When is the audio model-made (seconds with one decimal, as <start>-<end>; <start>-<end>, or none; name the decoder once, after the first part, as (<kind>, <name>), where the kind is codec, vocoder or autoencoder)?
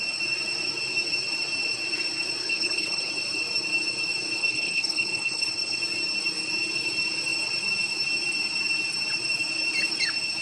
2.4-3.1 (codec, HILCodec); 4.4-5.8